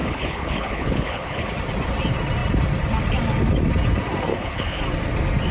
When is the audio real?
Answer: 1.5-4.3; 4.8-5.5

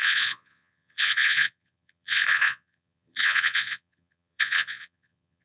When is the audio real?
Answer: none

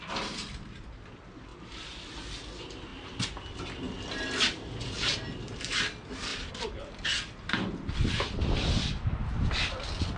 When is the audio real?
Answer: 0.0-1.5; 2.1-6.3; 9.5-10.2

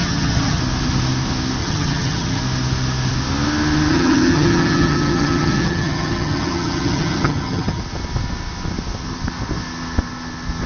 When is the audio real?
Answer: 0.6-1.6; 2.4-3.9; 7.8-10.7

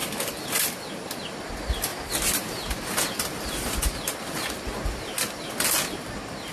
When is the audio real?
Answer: 0.0-6.5